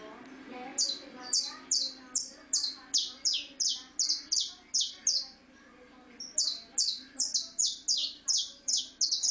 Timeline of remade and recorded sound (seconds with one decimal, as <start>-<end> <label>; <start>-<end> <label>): 0.0-8.0 recorded; 8.0-8.8 remade; 8.8-9.3 recorded